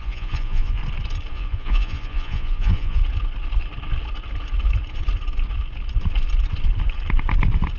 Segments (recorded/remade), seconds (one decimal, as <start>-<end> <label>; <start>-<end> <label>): 0.0-0.8 remade; 0.8-1.3 recorded; 1.3-3.0 remade; 3.0-7.8 recorded